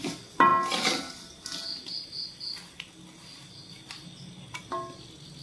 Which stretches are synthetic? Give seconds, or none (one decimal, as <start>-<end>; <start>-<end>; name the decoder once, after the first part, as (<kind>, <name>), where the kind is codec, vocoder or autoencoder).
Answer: none